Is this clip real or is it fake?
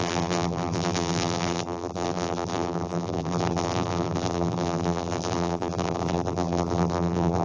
fake